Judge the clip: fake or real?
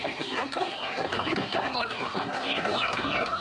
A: fake